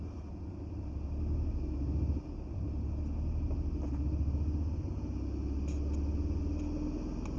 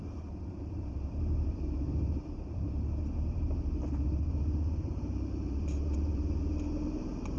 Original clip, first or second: first